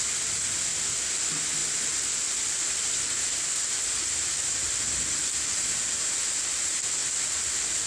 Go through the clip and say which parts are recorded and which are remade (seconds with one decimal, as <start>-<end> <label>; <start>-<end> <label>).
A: 0.0-7.9 recorded